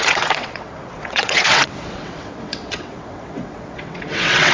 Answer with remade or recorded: remade